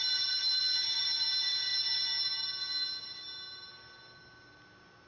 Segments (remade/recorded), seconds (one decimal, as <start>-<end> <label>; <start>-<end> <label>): 0.0-5.1 recorded